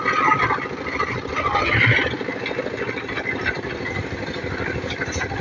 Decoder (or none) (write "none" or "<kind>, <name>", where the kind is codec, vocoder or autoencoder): vocoder, BigVGAN v2